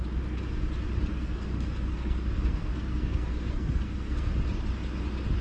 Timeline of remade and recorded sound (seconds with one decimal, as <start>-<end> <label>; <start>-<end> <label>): 0.0-1.1 recorded; 1.1-4.3 remade; 4.3-5.4 recorded